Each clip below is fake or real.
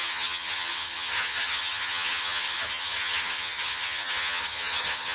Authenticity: fake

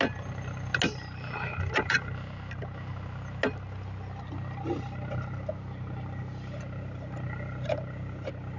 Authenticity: real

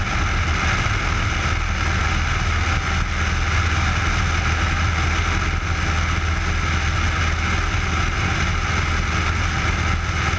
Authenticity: real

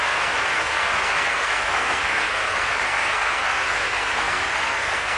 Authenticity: fake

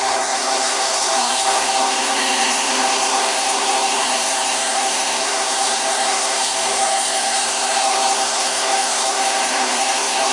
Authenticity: fake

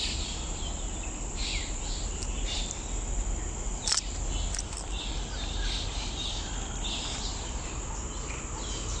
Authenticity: real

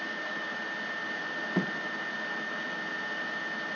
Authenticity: real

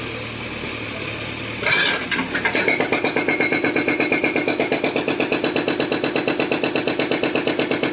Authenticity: real